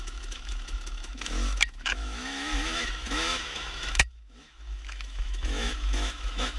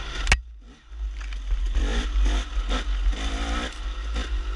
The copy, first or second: first